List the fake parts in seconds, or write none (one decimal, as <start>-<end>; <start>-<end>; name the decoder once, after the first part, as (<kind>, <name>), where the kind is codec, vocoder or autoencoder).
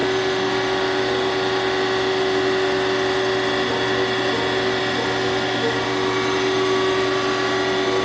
none